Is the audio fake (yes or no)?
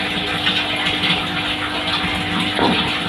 no